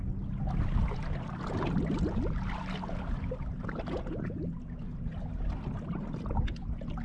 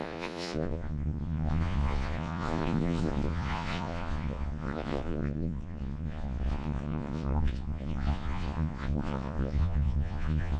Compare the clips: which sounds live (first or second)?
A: first